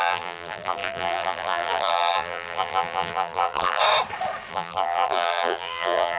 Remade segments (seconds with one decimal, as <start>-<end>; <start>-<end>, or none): 0.0-3.8; 4.5-6.2